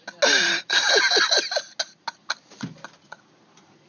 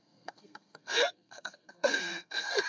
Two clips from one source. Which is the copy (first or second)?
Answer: second